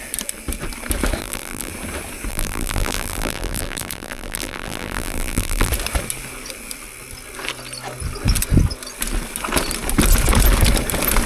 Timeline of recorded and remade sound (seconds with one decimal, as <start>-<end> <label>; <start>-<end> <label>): 0.0-1.2 recorded; 1.2-1.7 remade; 1.7-2.3 recorded; 2.3-5.7 remade; 5.7-11.3 recorded